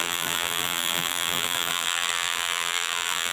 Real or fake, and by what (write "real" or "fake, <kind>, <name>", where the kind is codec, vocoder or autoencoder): fake, vocoder, BigVGAN v2